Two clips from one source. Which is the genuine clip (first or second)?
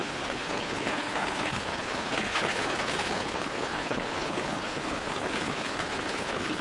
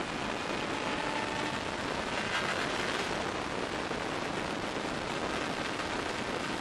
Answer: second